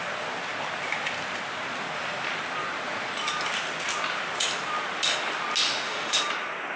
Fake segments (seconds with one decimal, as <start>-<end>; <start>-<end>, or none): 5.7-6.2